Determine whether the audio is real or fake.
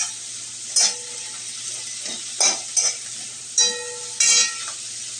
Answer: real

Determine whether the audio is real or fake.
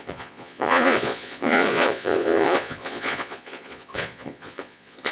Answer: fake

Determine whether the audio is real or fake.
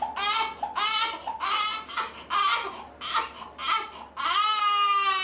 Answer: real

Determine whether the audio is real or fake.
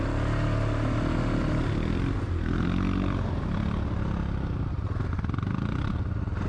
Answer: real